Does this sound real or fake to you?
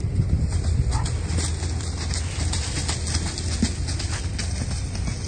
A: real